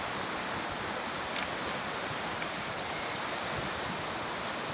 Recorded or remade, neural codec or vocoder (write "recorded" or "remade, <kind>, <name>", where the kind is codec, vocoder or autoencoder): recorded